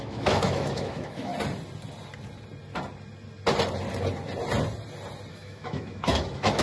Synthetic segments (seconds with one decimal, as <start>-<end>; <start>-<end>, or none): 0.0-1.3; 5.3-6.6